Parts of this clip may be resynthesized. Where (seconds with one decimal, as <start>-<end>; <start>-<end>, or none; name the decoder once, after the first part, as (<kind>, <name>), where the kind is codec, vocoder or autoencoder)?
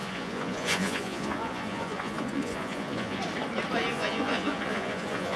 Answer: 0.0-3.2 (vocoder, Vocos); 3.9-5.4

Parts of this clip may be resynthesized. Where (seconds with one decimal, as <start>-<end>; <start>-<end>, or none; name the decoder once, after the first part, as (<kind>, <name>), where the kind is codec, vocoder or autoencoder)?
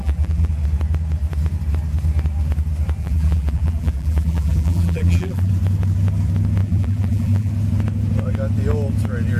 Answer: 0.0-0.5 (vocoder, BigVGAN v2); 3.0-5.5; 6.6-7.5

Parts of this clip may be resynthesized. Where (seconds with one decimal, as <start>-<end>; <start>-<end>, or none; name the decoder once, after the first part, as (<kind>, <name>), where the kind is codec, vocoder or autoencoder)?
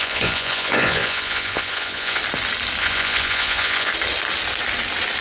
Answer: 0.0-2.2 (vocoder, Vocos); 2.8-3.9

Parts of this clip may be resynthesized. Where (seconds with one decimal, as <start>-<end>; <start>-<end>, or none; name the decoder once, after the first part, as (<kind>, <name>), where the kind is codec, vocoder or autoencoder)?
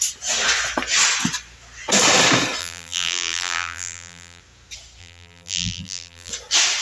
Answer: 2.6-4.4 (vocoder, BigVGAN v2); 5.0-6.3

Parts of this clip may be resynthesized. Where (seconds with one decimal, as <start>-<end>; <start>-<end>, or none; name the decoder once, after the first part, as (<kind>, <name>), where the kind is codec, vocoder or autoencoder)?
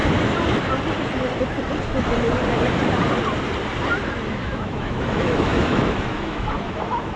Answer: 4.3-7.2 (autoencoder, DAC-VAE)